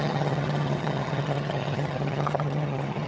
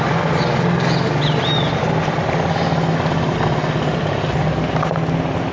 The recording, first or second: second